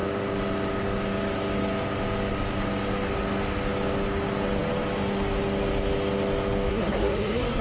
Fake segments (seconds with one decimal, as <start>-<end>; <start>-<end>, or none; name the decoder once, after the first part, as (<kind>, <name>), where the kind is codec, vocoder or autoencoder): 6.7-7.6 (codec, SNAC)